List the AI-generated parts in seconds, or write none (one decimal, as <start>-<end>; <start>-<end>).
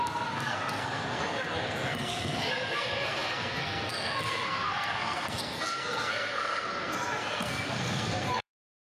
0.0-8.9